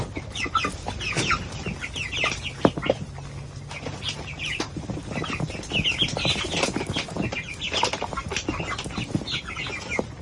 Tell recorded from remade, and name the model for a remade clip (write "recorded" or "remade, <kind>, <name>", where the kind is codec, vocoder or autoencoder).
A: recorded